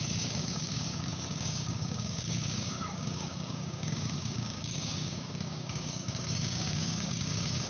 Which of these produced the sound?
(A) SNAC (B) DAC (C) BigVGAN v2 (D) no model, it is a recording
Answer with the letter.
B